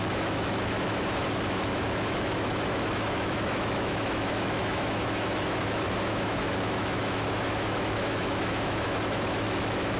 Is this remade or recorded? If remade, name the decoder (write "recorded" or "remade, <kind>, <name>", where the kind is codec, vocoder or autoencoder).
remade, autoencoder, DAC-VAE